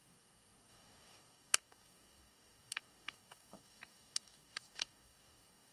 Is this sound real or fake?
fake